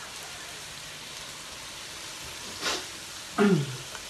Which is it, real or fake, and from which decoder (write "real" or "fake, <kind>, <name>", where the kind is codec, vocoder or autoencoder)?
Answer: real